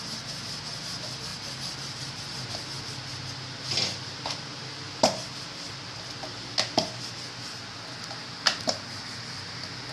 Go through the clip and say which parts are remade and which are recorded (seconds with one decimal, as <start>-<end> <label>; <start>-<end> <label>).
0.0-1.3 recorded; 1.3-2.2 remade; 2.2-9.9 recorded